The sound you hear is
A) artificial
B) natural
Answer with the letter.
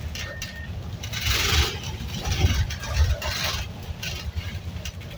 A